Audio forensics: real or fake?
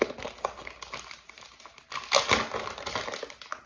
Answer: real